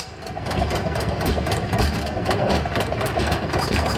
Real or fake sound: fake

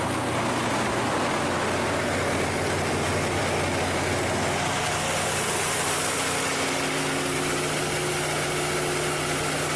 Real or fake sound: real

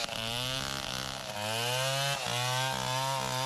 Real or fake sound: real